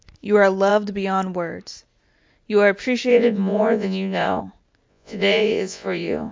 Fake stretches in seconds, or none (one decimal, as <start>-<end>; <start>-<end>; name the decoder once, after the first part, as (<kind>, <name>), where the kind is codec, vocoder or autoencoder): 3.1-4.4 (vocoder, Vocos); 4.9-6.3